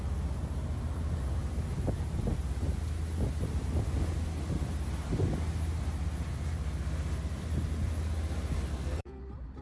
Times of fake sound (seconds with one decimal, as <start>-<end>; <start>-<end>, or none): 8.7-9.2